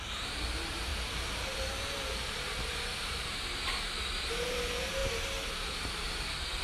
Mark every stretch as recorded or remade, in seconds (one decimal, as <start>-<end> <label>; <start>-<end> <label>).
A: 0.0-5.0 remade; 5.0-6.6 recorded